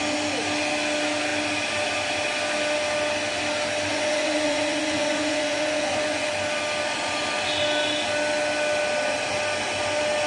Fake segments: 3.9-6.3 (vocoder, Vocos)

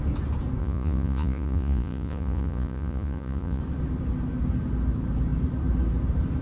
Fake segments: 0.6-3.6 (vocoder, Vocos)

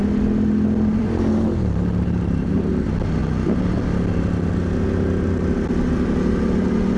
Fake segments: 0.9-2.7 (vocoder, BigVGAN v2)

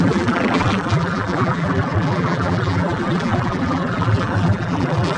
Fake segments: 0.0-5.2 (vocoder, BigVGAN v2)

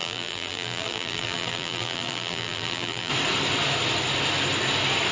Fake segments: 0.0-3.1 (vocoder, BigVGAN v2)